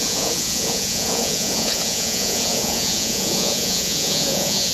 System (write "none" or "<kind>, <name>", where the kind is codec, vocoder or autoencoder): vocoder, Vocos